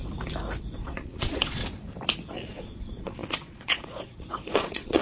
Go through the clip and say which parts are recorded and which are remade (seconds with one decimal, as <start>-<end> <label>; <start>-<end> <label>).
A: 0.0-0.6 recorded; 0.6-1.6 remade; 1.6-2.3 recorded; 2.3-5.0 remade